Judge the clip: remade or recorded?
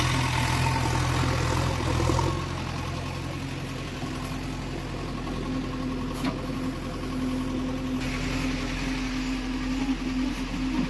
recorded